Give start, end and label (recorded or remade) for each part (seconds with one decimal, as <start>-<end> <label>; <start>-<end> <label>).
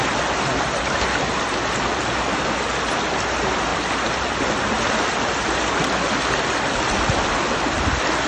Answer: 0.0-8.3 recorded